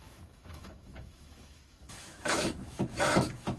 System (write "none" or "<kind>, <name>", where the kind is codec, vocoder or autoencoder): autoencoder, DAC-VAE